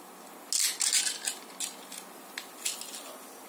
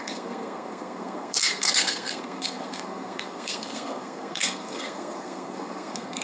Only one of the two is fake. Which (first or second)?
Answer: second